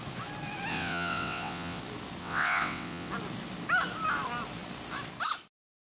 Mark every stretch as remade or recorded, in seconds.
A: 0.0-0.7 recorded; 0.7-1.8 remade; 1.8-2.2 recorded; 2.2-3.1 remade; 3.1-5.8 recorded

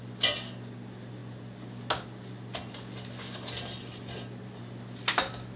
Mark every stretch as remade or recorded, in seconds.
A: 0.0-5.6 recorded

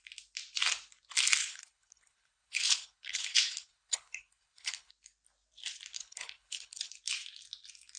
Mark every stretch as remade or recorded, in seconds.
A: 0.0-1.4 recorded; 1.4-4.9 remade; 4.9-5.9 recorded; 5.9-6.9 remade; 6.9-8.0 recorded

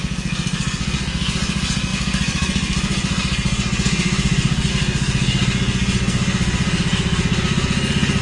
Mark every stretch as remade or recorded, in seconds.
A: 0.0-8.2 remade